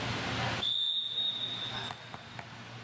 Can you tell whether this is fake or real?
real